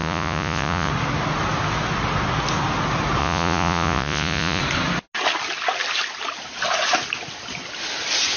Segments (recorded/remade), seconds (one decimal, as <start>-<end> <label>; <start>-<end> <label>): 0.0-0.9 remade; 0.9-3.2 recorded; 3.2-4.6 remade; 4.6-8.4 recorded